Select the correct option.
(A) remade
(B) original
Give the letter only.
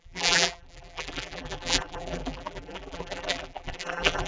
A